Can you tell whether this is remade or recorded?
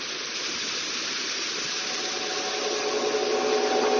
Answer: recorded